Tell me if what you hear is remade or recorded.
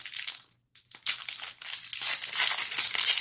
recorded